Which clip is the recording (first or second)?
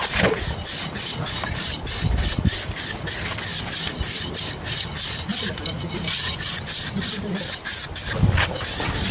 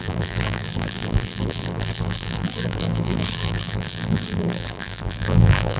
first